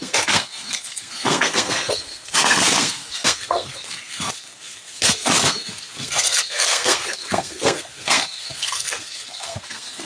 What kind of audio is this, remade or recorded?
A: remade